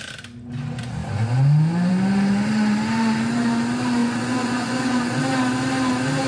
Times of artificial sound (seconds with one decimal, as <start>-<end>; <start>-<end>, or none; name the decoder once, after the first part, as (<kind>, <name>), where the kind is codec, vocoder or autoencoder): 4.0-5.2 (vocoder, Vocos)